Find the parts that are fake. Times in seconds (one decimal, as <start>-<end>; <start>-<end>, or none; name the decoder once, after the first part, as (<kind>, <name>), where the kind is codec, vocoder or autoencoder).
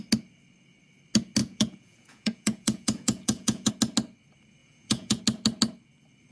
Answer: 1.4-3.7 (vocoder, Vocos); 4.6-5.2